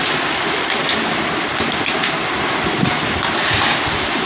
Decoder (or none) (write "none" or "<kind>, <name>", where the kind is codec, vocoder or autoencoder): none